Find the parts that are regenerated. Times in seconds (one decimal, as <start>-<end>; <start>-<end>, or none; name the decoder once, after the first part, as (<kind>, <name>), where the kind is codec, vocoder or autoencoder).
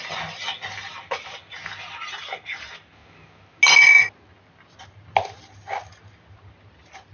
none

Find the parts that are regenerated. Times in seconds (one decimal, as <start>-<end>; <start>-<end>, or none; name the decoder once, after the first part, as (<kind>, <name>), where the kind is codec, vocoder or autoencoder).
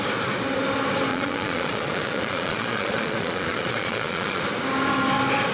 1.1-4.4 (vocoder, Vocos)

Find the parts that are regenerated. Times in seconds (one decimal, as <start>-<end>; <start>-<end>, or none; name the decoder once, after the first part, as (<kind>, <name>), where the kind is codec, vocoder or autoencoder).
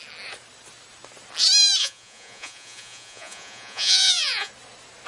1.8-4.5 (vocoder, Vocos)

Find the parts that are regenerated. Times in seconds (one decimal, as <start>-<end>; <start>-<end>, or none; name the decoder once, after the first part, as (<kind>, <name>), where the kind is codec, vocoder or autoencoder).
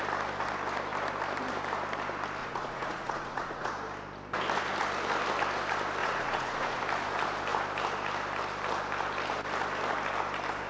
2.4-3.7 (vocoder, Vocos); 6.0-6.8